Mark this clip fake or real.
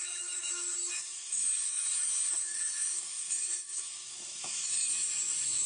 fake